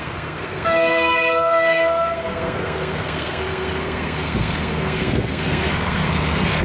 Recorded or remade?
remade